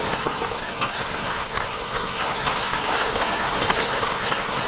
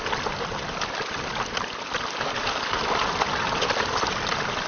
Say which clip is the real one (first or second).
second